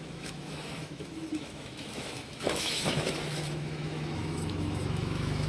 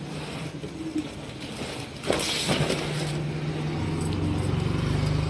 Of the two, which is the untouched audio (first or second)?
second